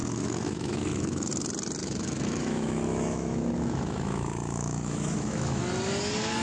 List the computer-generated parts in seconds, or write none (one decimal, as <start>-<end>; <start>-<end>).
0.0-1.3; 1.8-5.6